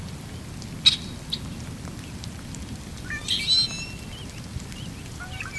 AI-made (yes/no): no